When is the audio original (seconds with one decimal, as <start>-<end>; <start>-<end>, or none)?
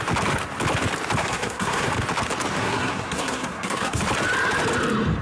0.0-1.2; 1.9-2.6; 4.0-5.2